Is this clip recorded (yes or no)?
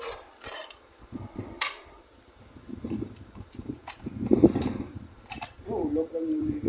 no